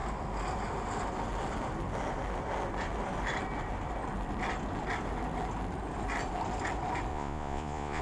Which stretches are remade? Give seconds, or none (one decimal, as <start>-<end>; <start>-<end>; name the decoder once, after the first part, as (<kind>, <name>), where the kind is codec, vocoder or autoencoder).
7.1-8.0 (vocoder, Vocos)